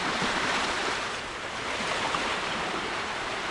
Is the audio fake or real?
fake